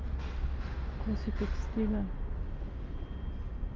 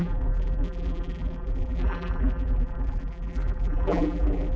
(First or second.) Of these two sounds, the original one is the first